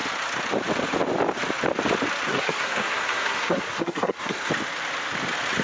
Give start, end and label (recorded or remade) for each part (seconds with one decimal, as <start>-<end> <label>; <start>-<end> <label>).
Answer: 0.0-2.3 recorded; 2.3-4.5 remade; 4.5-5.6 recorded